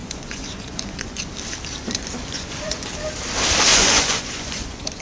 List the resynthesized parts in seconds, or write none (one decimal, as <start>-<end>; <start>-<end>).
0.0-1.2; 1.8-2.9; 3.7-5.0